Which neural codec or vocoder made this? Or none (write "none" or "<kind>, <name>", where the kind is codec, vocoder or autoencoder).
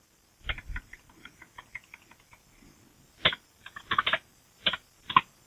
none